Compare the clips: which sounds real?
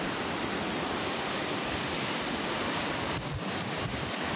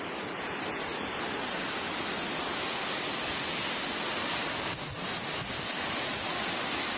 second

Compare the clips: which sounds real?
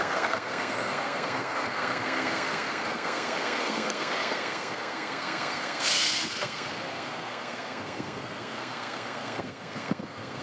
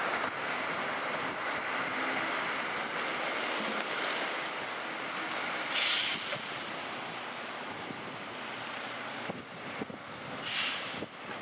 second